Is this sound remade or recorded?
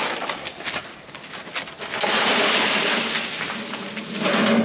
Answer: recorded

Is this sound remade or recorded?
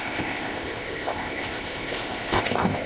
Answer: remade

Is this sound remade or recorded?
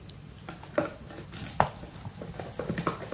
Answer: recorded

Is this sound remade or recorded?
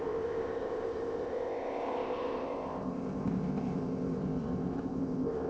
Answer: remade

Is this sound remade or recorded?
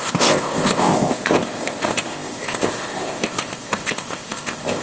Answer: remade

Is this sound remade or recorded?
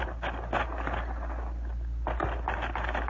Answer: recorded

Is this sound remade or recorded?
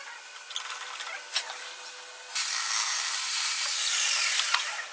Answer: recorded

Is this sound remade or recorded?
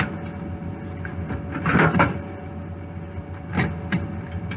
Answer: recorded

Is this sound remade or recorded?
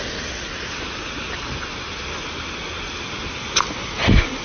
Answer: recorded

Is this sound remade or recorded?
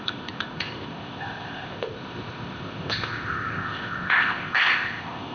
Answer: remade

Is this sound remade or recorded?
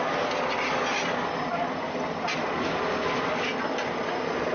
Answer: recorded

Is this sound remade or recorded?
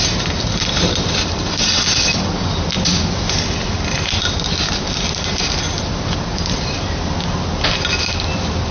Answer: recorded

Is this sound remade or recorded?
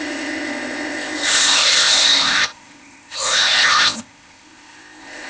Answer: remade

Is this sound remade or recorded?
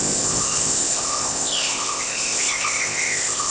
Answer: remade